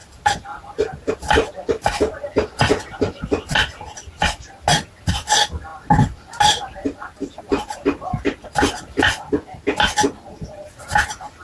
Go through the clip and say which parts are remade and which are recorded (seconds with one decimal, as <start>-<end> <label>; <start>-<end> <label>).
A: 0.0-1.1 remade; 1.1-5.7 recorded; 5.7-7.4 remade; 7.4-11.4 recorded